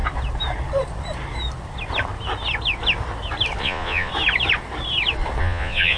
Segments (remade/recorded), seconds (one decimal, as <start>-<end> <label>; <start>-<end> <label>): 0.0-3.6 recorded; 3.6-4.1 remade; 4.1-5.4 recorded; 5.4-6.0 remade